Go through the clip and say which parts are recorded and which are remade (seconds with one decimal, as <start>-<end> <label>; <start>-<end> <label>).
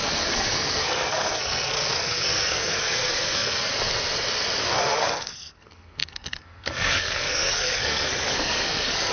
0.0-3.7 remade; 3.7-4.6 recorded; 4.6-9.1 remade